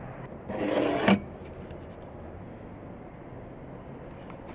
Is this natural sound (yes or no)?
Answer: yes